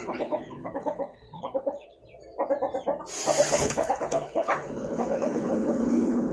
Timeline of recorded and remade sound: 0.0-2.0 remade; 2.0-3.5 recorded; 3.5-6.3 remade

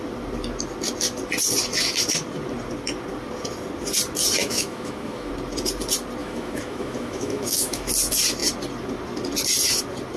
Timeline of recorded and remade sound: 0.0-4.4 recorded; 4.4-5.3 remade; 5.3-6.2 recorded; 6.2-7.9 remade; 7.9-10.2 recorded

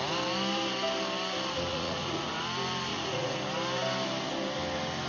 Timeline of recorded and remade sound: 0.0-1.7 recorded; 1.7-2.3 remade; 2.3-2.9 recorded; 2.9-3.4 remade; 3.4-5.1 recorded

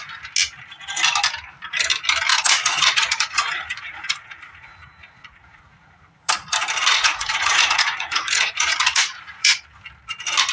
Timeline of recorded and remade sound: 0.0-2.3 recorded; 2.3-6.3 remade; 6.3-6.9 recorded; 6.9-9.6 remade; 9.6-10.5 recorded

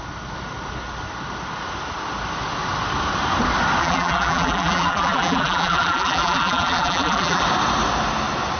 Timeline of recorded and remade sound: 0.0-3.8 recorded; 3.8-7.4 remade; 7.4-8.6 recorded

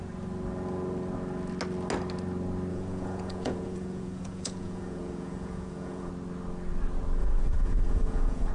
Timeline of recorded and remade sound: 0.0-2.7 recorded; 2.7-6.1 remade; 6.1-7.2 recorded; 7.2-8.5 remade